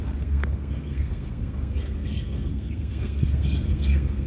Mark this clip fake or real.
fake